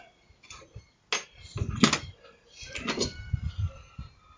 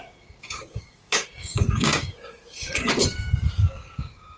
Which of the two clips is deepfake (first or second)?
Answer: second